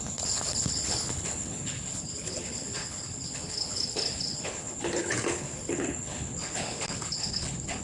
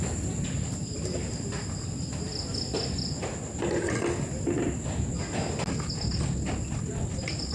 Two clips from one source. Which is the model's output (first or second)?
first